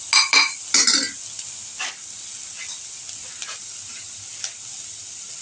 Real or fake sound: real